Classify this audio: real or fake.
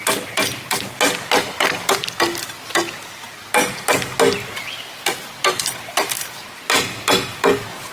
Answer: real